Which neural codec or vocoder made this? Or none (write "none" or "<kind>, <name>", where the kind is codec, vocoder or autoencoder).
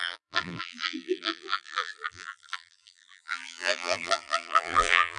vocoder, BigVGAN v2